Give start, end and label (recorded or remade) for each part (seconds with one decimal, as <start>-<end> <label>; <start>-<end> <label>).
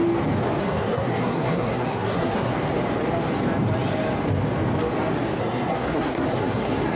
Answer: 0.0-0.6 recorded; 0.6-2.5 remade; 2.5-5.4 recorded; 5.4-7.0 remade